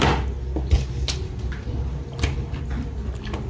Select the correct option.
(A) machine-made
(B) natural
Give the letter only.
B